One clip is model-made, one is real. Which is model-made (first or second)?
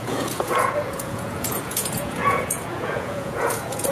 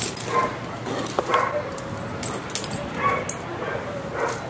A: first